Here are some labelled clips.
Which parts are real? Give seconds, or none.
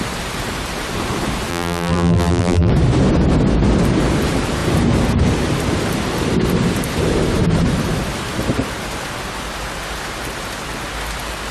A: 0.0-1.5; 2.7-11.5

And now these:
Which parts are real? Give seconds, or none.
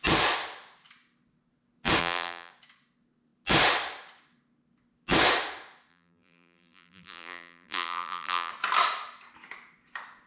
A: 0.0-2.0; 2.5-5.9; 8.5-10.3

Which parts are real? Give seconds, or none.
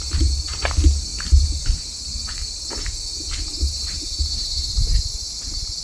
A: 0.0-1.1; 2.6-5.8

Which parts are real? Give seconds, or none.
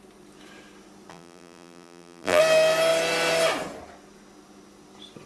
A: 0.0-1.1; 2.4-5.3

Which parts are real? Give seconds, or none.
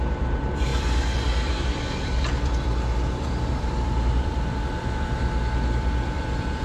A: none